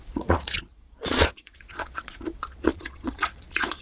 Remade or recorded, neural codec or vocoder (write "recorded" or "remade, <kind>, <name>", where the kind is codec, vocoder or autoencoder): remade, vocoder, Vocos